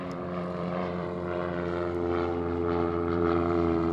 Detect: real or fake fake